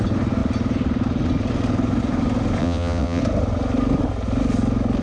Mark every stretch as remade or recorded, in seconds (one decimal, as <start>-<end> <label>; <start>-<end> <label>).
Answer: 0.0-2.6 recorded; 2.6-3.2 remade; 3.2-5.0 recorded